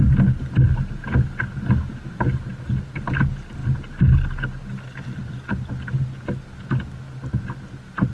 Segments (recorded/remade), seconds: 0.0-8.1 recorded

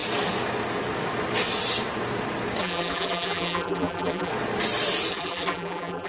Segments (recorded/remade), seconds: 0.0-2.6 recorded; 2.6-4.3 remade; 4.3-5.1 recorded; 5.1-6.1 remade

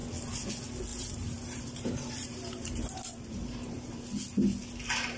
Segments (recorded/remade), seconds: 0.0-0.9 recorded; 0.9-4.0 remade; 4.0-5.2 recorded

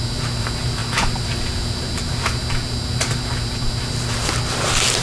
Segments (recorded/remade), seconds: 0.0-5.0 remade

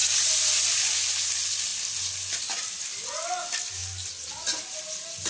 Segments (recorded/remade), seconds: 0.0-5.3 recorded